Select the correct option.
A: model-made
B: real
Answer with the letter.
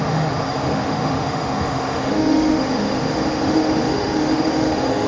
A